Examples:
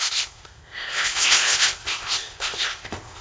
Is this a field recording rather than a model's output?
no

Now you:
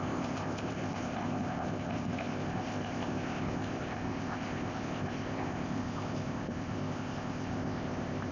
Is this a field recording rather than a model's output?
no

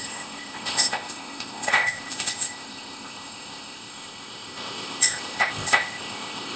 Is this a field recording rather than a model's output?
no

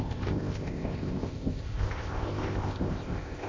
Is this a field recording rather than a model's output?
no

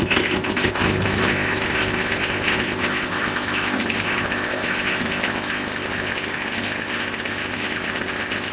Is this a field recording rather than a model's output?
no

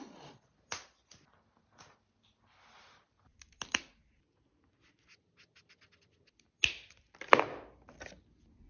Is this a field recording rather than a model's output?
yes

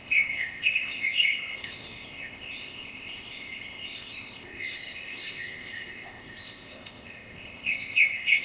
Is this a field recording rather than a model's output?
no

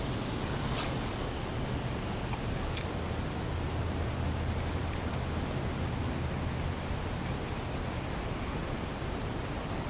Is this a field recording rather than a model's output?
yes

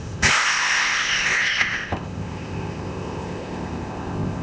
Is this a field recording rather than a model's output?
no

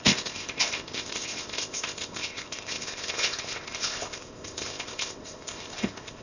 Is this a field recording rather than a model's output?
no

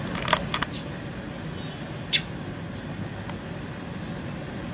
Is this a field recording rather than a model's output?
yes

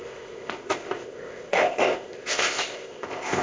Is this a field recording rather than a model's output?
no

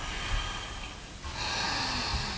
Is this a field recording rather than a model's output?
yes